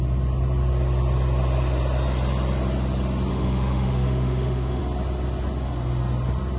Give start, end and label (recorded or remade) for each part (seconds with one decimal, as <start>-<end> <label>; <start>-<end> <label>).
0.0-3.3 recorded; 3.3-4.8 remade; 4.8-6.6 recorded